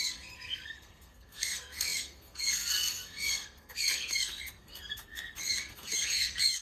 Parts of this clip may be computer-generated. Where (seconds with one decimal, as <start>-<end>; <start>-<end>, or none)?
0.0-6.6